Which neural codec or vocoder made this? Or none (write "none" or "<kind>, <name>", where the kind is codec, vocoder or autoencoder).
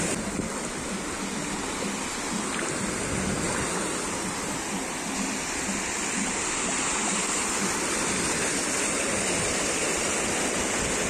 none